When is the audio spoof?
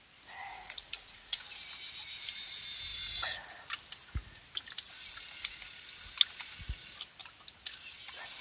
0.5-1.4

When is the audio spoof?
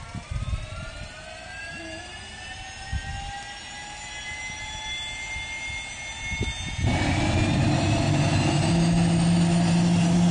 none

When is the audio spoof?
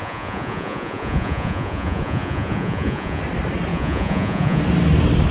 0.0-3.2; 3.7-4.6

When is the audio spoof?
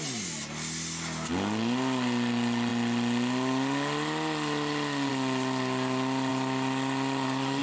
none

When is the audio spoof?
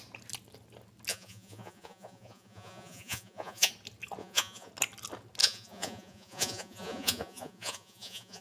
1.1-3.7; 4.2-4.7; 5.4-8.4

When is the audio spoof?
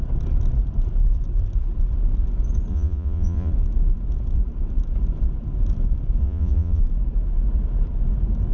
2.7-3.5; 6.2-6.8